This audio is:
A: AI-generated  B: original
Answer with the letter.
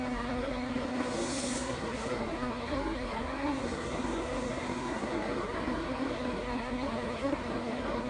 A